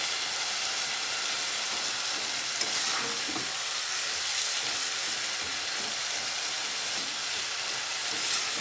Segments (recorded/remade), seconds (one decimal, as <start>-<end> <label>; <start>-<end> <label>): 0.0-8.6 recorded